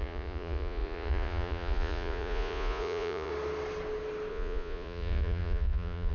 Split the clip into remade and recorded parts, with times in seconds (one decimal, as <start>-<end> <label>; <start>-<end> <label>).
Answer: 0.0-3.3 remade; 3.3-4.3 recorded; 4.3-6.1 remade